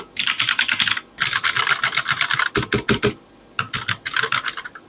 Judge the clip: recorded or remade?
recorded